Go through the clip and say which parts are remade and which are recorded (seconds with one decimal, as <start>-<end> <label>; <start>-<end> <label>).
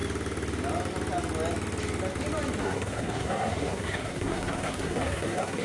0.0-2.6 recorded; 2.6-5.6 remade